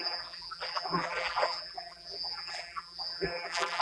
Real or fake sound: fake